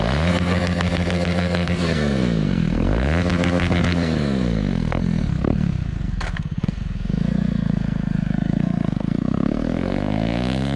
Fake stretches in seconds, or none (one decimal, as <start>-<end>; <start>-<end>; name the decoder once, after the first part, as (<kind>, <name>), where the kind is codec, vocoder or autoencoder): 0.0-10.8 (codec, SNAC)

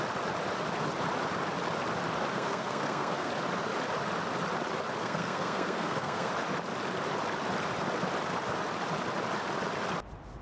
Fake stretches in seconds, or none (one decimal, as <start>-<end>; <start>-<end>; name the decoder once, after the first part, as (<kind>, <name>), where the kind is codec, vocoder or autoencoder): 2.3-3.3 (codec, SNAC); 5.0-6.3

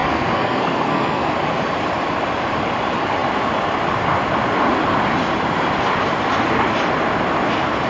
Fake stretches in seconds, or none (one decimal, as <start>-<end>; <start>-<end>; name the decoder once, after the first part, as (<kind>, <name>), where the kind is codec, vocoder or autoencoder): 0.0-1.3 (codec, SNAC)

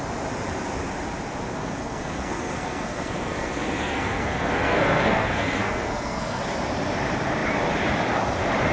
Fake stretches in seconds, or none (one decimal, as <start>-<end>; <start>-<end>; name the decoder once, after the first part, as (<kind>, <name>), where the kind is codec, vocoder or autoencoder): 1.6-6.4 (codec, SNAC)